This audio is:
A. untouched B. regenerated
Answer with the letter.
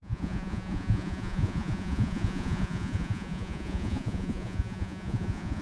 B